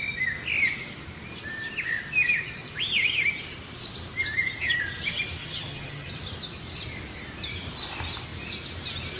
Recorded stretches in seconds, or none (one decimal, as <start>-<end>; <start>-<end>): 0.0-5.4; 6.1-9.2